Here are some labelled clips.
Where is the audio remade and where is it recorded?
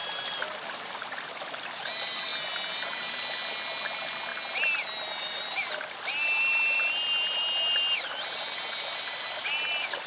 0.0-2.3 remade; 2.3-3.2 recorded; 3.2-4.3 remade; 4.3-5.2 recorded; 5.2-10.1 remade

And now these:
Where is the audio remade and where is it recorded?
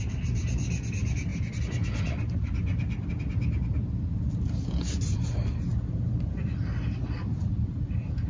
0.0-8.3 recorded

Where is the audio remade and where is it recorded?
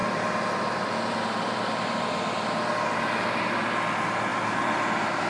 0.0-2.7 remade; 2.7-4.3 recorded; 4.3-5.3 remade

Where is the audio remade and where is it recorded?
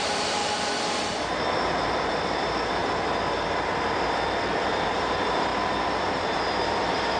0.0-0.4 remade; 0.4-1.5 recorded; 1.5-2.8 remade; 2.8-4.7 recorded; 4.7-5.5 remade; 5.5-6.0 recorded; 6.0-7.2 remade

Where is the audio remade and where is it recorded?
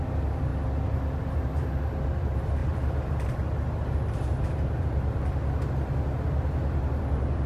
0.0-2.6 recorded; 2.6-4.8 remade; 4.8-7.5 recorded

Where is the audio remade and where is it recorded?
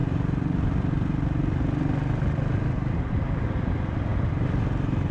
0.0-3.1 remade; 3.1-5.1 recorded